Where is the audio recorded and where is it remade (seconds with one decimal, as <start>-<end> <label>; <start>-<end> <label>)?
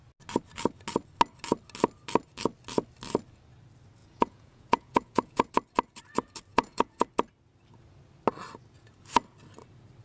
0.0-4.0 recorded; 4.0-5.5 remade; 5.5-6.5 recorded; 6.5-7.1 remade; 7.1-10.0 recorded